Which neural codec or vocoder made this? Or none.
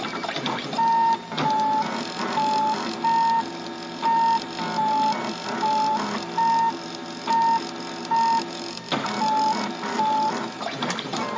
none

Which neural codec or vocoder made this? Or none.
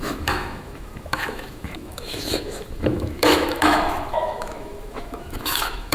autoencoder, DAC-VAE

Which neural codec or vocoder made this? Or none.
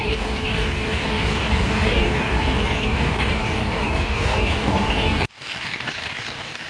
codec, DAC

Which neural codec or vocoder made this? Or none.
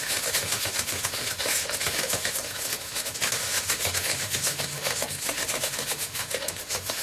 autoencoder, DAC-VAE